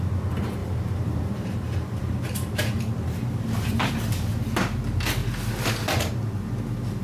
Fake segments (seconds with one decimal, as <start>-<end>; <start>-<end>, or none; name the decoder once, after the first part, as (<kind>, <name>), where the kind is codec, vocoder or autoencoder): 0.6-3.9 (vocoder, BigVGAN v2)